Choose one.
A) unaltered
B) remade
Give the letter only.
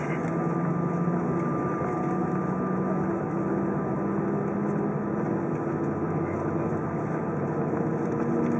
A